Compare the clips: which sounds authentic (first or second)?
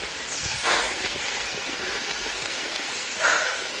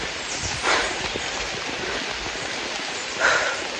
second